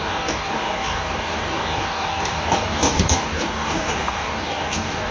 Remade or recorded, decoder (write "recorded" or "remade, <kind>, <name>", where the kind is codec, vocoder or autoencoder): remade, codec, DAC